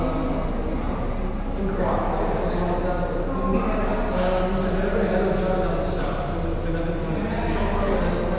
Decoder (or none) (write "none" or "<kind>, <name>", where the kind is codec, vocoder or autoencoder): none